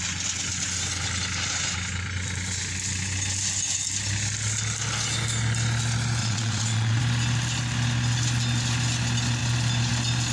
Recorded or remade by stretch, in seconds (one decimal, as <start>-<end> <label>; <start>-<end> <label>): 0.0-6.2 recorded; 6.2-7.0 remade; 7.0-10.3 recorded